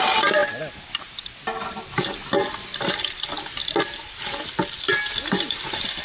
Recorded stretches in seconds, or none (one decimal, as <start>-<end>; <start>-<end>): 0.0-6.0